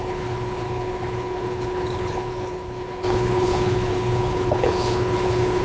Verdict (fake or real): fake